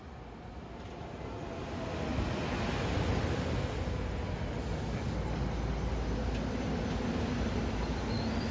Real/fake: real